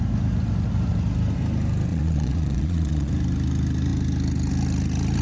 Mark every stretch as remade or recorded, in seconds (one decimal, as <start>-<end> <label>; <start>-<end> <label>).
0.0-1.9 recorded; 1.9-3.1 remade; 3.1-5.2 recorded